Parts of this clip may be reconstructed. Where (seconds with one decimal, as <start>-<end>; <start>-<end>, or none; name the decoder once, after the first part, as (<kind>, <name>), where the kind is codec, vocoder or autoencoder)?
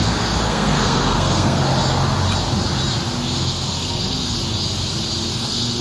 0.0-1.6 (codec, SNAC); 3.4-4.4; 5.3-5.8